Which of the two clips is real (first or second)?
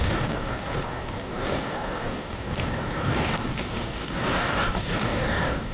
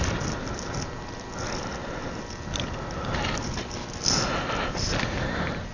second